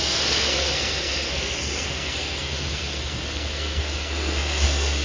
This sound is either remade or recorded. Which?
remade